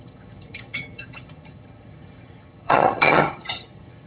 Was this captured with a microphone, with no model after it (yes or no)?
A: no